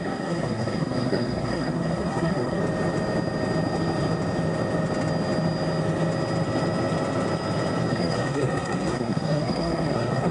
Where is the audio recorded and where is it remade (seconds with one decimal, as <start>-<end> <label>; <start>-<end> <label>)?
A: 0.0-2.6 remade; 2.6-7.9 recorded; 7.9-10.3 remade